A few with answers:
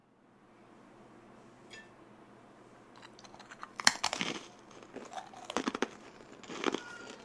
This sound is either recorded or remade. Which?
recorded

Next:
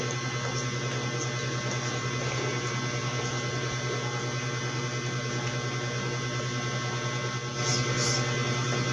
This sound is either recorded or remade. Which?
remade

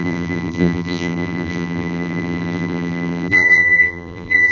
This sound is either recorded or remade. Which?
remade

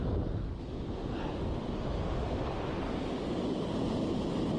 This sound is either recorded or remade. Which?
recorded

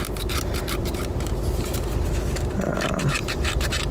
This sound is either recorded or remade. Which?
remade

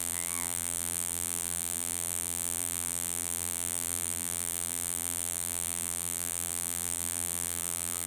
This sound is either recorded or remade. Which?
remade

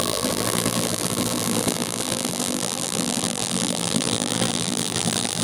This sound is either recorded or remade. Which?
remade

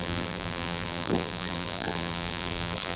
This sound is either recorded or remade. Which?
remade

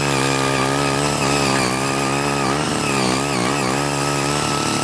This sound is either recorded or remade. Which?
recorded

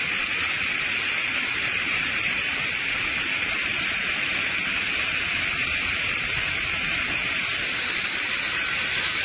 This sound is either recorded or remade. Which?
remade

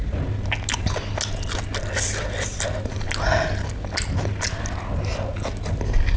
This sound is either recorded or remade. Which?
recorded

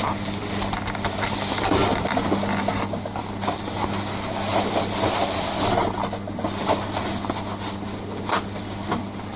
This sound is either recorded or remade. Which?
recorded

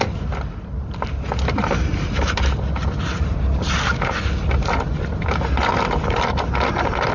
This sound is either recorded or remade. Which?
recorded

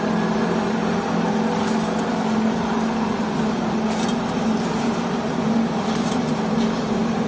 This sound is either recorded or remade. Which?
remade